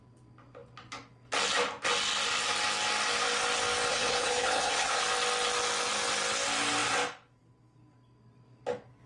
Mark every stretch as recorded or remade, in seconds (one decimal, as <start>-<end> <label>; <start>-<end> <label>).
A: 0.0-3.9 recorded; 3.9-5.0 remade; 5.0-9.1 recorded